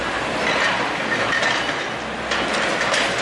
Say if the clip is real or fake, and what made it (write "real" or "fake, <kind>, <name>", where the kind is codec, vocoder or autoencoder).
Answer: real